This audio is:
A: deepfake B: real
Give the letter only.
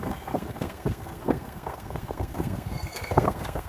A